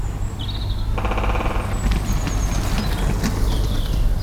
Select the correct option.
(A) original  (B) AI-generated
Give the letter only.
A